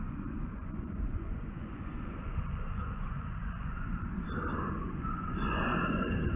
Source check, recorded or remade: remade